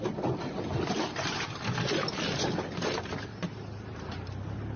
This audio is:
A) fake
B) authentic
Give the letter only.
B